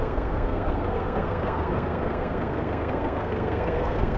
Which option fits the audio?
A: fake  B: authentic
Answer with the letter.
A